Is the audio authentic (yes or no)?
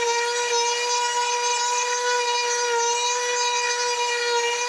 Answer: yes